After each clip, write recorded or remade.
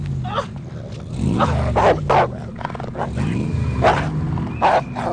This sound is recorded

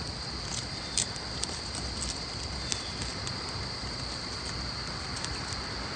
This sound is recorded